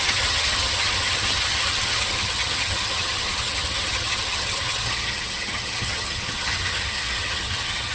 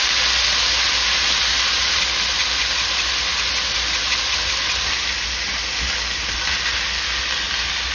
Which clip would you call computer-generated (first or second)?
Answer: first